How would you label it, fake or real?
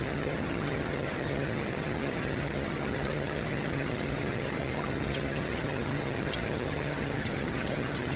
fake